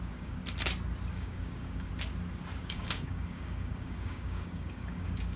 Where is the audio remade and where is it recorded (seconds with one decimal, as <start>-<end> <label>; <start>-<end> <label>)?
0.0-0.4 remade; 0.4-1.1 recorded; 1.1-1.9 remade; 1.9-2.6 recorded; 2.6-5.4 remade